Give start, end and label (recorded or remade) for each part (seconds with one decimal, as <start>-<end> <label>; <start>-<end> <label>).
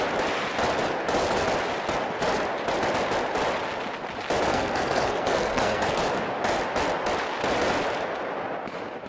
0.0-4.5 recorded; 4.5-6.0 remade; 6.0-9.1 recorded